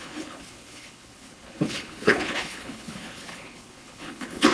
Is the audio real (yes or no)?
no